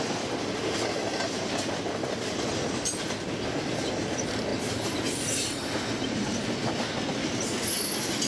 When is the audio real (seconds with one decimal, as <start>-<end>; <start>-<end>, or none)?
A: 0.0-8.3